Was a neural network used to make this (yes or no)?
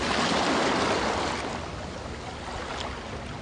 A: no